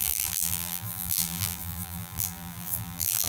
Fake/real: fake